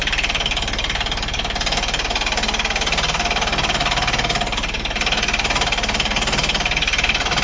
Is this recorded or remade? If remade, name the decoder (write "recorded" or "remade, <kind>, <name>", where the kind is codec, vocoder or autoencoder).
recorded